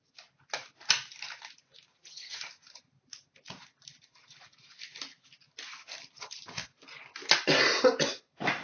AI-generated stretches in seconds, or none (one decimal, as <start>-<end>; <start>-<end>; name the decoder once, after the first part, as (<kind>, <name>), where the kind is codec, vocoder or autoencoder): 1.9-2.4 (vocoder, HiFi-GAN)